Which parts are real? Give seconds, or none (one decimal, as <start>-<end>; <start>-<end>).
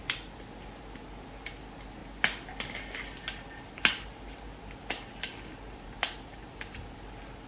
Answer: 0.0-7.5